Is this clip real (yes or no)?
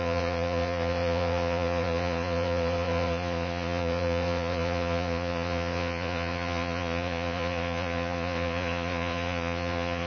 no